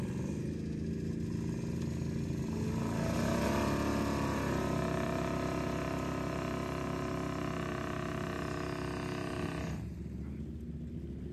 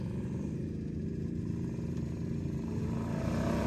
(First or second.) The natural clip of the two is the first